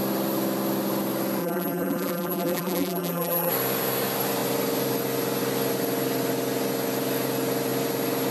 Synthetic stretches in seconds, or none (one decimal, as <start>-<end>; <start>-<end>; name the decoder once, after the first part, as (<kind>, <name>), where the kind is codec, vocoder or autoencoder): 1.4-3.5 (vocoder, BigVGAN v2)